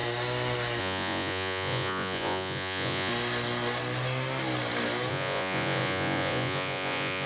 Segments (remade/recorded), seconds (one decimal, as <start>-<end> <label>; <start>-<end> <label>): 0.0-0.8 recorded; 0.8-3.1 remade; 3.1-5.1 recorded; 5.1-7.3 remade